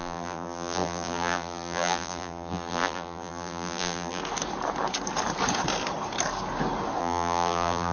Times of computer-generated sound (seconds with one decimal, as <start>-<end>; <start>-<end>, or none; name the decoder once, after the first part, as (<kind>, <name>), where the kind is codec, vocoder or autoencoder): 0.0-4.2 (vocoder, BigVGAN v2); 7.0-7.9